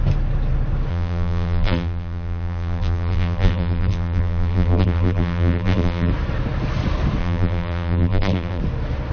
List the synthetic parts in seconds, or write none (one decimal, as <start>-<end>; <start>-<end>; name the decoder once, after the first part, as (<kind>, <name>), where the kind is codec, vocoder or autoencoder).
0.9-6.1 (vocoder, BigVGAN v2); 7.2-8.6